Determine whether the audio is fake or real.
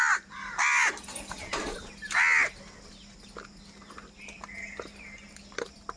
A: real